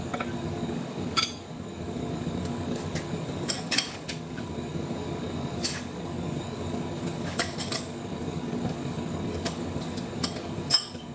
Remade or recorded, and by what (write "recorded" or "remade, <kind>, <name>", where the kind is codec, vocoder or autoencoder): remade, codec, DAC